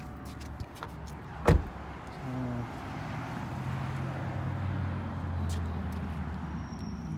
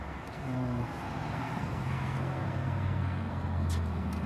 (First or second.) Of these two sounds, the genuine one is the first